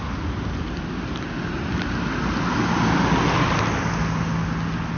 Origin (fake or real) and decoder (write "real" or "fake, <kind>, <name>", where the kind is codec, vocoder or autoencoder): real